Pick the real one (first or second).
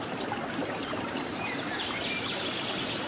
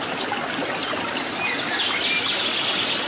second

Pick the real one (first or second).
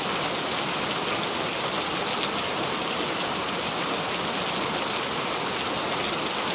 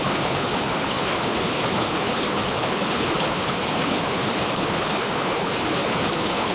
first